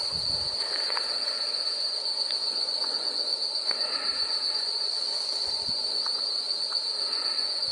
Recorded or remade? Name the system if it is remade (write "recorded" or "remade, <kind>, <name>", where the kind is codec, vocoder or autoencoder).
remade, vocoder, Vocos